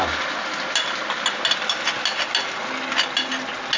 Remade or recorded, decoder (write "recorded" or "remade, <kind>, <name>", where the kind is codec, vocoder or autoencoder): recorded